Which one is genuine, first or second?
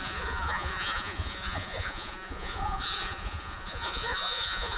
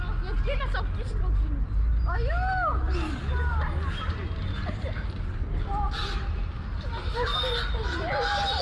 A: second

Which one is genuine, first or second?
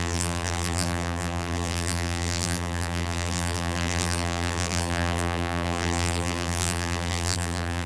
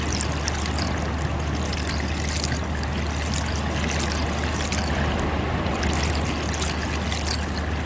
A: second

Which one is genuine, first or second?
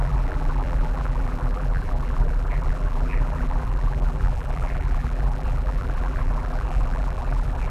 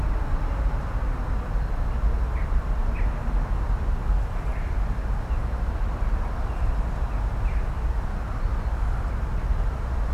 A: second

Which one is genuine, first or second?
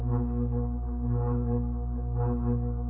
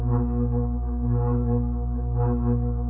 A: first